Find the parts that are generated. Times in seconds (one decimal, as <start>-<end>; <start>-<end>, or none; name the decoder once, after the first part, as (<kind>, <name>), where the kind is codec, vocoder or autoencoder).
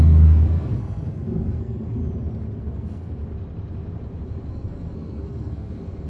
0.0-2.0 (codec, SNAC); 2.6-3.2; 4.5-6.1